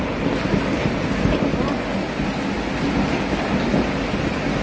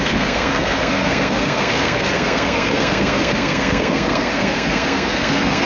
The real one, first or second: first